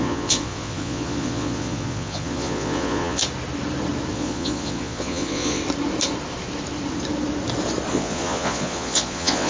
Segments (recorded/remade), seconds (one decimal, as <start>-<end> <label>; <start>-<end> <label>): 0.0-3.2 remade; 3.2-4.1 recorded; 4.1-5.6 remade; 5.6-7.9 recorded; 7.9-9.5 remade